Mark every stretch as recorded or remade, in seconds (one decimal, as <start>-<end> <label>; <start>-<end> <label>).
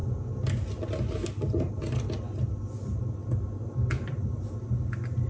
0.0-5.3 recorded